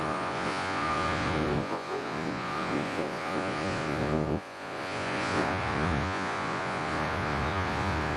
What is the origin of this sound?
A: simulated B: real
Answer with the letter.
A